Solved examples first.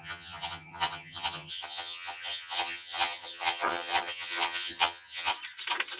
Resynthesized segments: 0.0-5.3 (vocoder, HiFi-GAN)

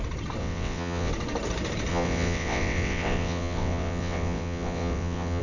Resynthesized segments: 0.4-1.1 (vocoder, WaveNeXt); 1.9-5.4

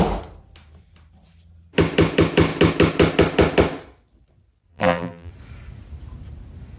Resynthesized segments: 4.7-5.3 (vocoder, BigVGAN v2)

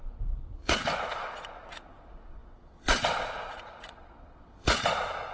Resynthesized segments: 0.0-5.3 (vocoder, Vocos)

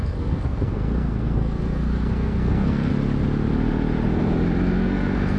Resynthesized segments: 0.0-2.9 (codec, SNAC); 4.8-5.4

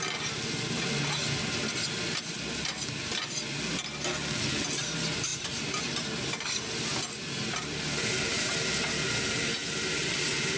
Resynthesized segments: 5.3-8.1 (vocoder, BigVGAN v2); 9.6-10.6